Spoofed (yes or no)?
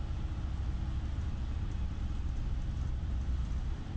no